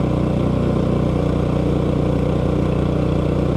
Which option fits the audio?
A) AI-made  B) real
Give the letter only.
B